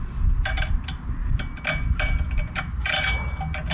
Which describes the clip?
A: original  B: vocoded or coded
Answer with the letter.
A